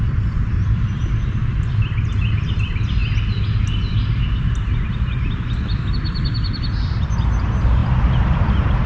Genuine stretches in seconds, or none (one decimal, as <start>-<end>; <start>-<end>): 3.0-4.2